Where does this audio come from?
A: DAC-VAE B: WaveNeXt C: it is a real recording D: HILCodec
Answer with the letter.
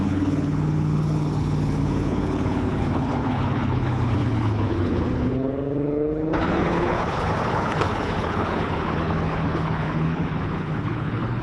D